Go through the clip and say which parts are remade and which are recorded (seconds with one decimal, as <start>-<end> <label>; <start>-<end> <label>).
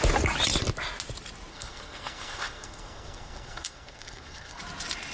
0.0-1.5 recorded; 1.5-4.6 remade; 4.6-5.1 recorded